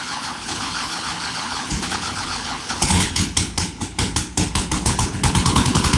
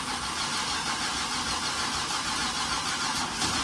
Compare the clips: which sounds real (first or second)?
second